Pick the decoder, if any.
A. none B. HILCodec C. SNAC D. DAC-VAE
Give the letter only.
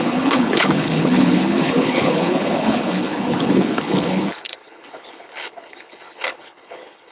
B